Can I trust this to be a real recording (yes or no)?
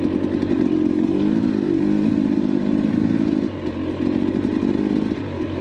yes